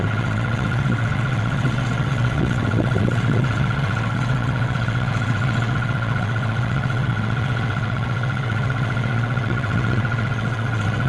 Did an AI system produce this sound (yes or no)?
yes